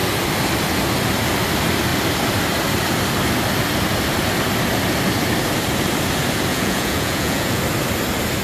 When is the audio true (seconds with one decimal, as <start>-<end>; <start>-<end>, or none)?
0.0-6.5; 7.6-8.4